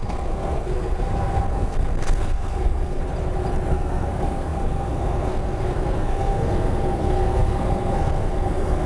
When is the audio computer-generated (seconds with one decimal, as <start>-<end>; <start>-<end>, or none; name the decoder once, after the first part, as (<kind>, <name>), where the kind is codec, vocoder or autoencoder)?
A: 0.0-3.0 (codec, SNAC); 3.7-8.9